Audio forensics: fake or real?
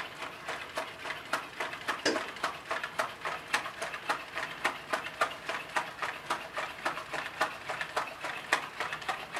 real